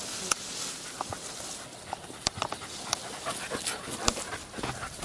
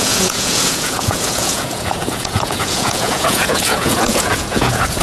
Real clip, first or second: first